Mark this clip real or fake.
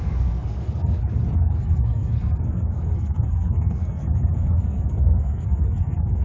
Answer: fake